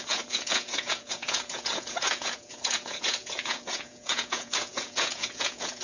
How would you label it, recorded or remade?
remade